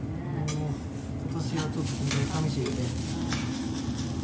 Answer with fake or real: real